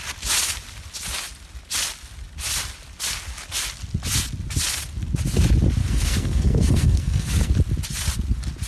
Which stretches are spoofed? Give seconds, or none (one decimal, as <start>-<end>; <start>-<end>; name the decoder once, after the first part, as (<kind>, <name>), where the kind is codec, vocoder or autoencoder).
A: 5.8-7.5 (codec, SNAC)